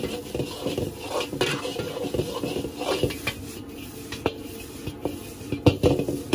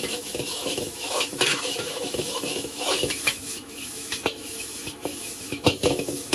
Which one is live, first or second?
first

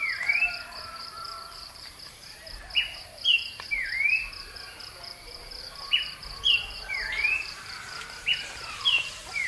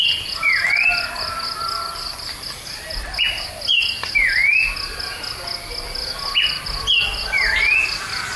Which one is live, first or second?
second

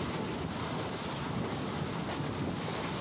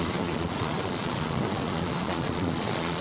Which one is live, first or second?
first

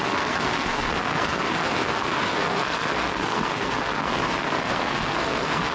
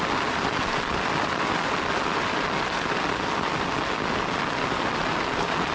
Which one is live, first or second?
second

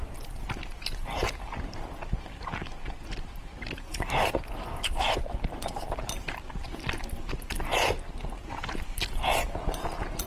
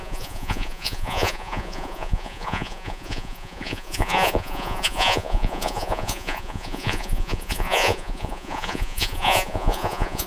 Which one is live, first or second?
first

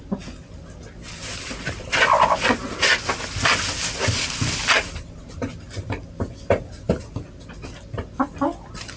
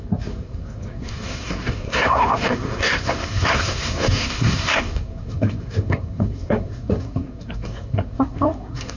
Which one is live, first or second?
first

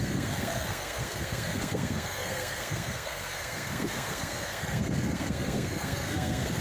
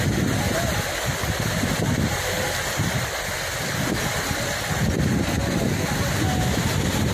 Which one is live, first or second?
second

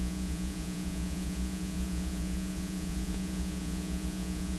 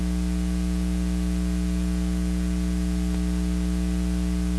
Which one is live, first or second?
second